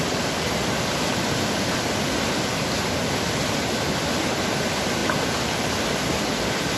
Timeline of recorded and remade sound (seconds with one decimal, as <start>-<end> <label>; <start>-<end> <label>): 0.0-6.8 recorded